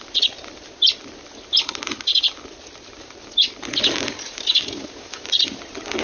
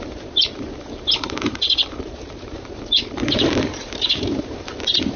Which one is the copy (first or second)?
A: second